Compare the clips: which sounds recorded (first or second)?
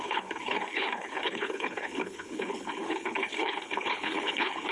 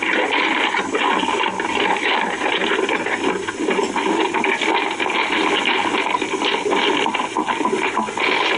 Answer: second